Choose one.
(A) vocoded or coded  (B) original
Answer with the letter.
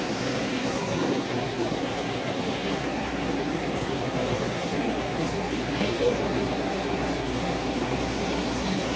A